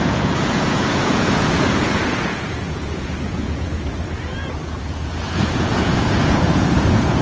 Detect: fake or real fake